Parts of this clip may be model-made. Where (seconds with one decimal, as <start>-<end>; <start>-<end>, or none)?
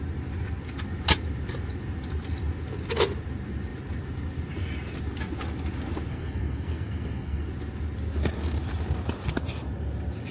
6.1-7.5